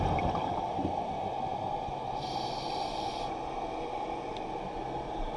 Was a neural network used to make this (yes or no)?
no